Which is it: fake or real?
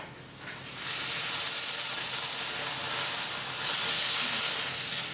real